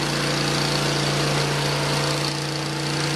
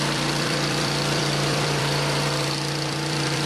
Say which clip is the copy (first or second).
second